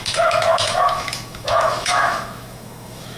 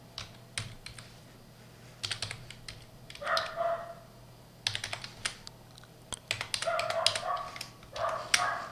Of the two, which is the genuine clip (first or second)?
second